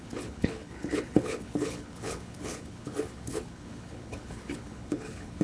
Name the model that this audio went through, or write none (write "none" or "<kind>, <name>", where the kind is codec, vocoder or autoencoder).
codec, HILCodec